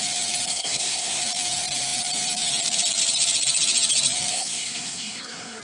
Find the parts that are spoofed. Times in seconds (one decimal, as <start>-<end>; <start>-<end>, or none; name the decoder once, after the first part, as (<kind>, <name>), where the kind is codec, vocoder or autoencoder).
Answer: 0.5-1.2 (codec, SNAC); 4.3-5.6